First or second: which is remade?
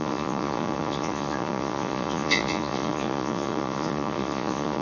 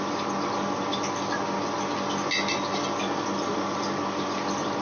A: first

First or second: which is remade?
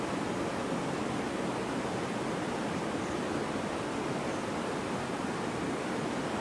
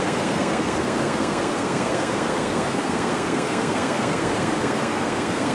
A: second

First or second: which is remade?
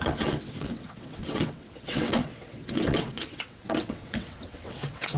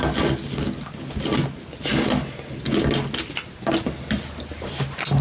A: first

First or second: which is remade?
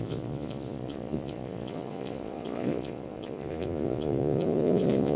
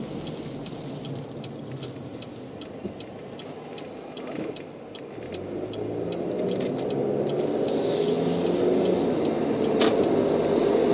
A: first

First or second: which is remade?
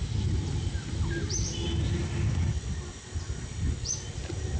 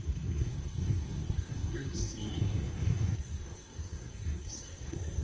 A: second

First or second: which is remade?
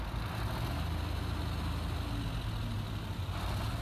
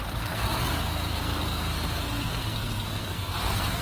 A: second